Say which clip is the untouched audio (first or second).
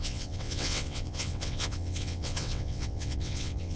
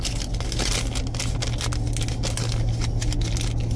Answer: second